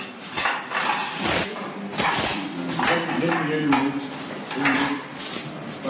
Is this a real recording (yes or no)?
yes